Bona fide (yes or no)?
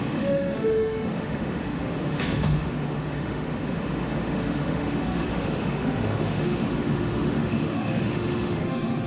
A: no